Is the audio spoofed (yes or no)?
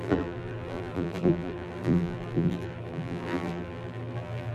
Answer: yes